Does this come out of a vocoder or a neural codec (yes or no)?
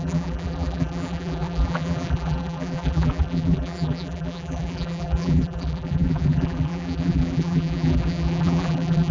yes